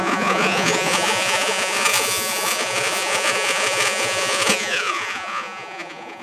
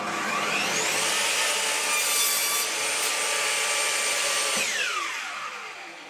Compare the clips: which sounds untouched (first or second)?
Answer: second